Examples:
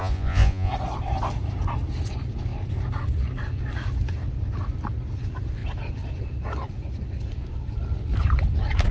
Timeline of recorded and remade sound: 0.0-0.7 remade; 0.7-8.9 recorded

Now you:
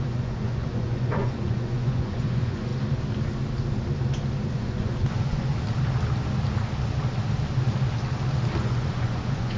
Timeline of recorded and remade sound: 0.0-2.7 remade; 2.7-4.5 recorded; 4.5-5.5 remade; 5.5-8.6 recorded; 8.6-9.6 remade

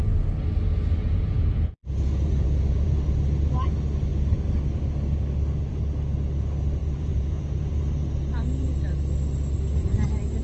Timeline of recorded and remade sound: 0.0-1.0 recorded; 1.0-3.1 remade; 3.1-6.8 recorded; 6.8-7.8 remade; 7.8-10.4 recorded